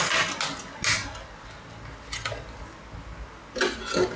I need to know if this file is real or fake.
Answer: real